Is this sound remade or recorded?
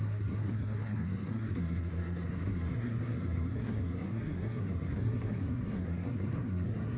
remade